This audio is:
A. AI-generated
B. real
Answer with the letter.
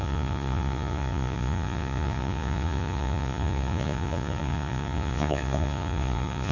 A